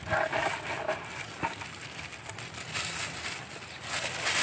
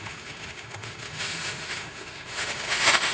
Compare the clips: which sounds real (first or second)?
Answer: first